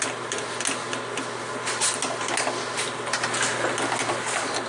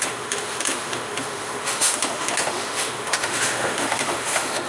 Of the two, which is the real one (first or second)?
first